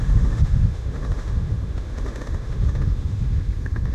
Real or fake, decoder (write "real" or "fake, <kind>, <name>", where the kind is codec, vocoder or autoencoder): fake, autoencoder, DAC-VAE